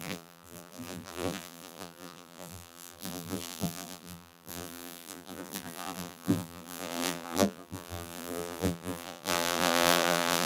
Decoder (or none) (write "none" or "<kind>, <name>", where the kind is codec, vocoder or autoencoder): vocoder, BigVGAN v2